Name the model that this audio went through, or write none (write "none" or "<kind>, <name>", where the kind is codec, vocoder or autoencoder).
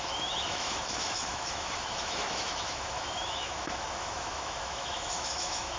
autoencoder, DAC-VAE